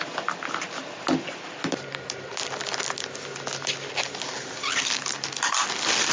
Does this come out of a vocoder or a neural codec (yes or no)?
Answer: no